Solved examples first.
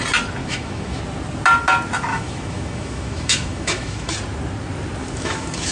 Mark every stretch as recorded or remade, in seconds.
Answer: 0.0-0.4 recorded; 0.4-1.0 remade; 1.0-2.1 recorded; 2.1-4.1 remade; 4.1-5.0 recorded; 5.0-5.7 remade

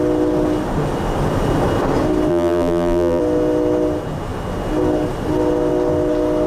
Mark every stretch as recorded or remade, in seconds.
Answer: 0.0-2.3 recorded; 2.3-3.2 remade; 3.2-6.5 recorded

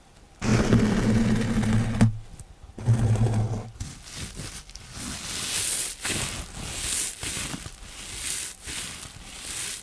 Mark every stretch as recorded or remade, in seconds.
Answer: 0.0-9.8 recorded